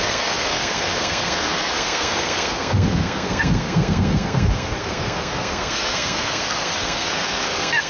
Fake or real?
fake